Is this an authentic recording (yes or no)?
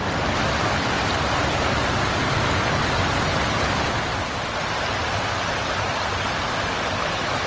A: yes